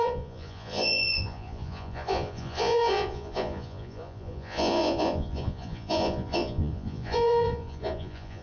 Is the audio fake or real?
fake